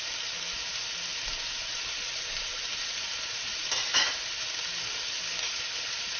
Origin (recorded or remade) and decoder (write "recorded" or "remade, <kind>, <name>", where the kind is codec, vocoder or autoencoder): recorded